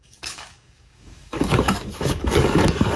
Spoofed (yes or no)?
yes